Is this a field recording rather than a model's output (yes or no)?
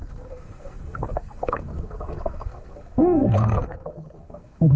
no